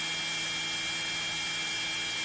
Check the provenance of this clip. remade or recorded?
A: recorded